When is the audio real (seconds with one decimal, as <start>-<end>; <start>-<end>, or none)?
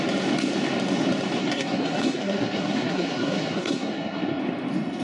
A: 0.0-1.4; 4.4-5.0